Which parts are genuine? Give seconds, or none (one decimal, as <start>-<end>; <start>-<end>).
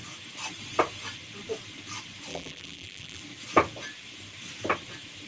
0.0-2.3; 3.2-5.3